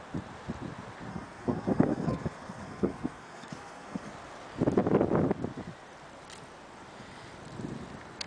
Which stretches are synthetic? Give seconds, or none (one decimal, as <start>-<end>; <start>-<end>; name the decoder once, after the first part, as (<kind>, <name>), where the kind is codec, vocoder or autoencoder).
1.1-4.1 (codec, SNAC)